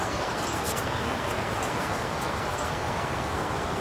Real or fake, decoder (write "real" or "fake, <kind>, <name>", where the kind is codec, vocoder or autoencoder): fake, codec, SNAC